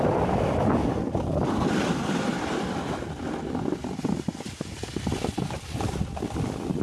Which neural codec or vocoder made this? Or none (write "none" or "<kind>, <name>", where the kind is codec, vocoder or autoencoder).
none